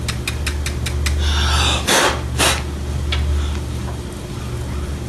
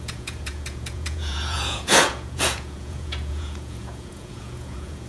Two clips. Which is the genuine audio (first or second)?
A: first